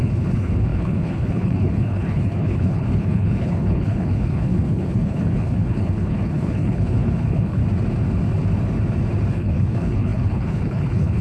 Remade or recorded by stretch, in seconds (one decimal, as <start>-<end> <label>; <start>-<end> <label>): 0.0-7.6 remade; 7.6-9.3 recorded; 9.3-11.2 remade